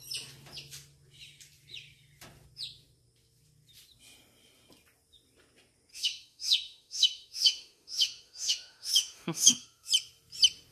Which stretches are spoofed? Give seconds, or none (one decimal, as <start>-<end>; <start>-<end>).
5.9-9.9